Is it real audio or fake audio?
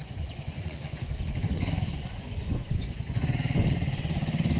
fake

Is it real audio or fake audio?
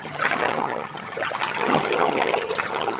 fake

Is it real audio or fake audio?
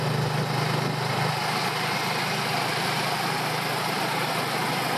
real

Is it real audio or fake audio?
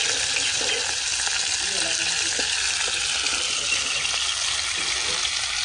real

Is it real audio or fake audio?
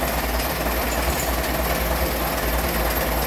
real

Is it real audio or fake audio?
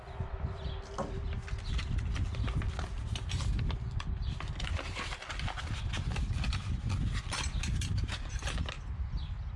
real